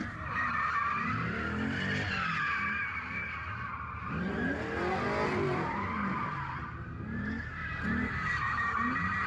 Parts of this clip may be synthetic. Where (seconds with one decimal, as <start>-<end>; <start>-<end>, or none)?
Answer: none